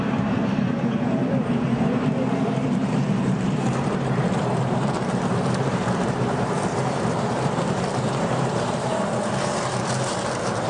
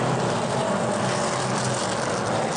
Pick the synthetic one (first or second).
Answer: first